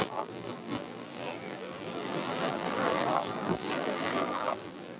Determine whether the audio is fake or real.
fake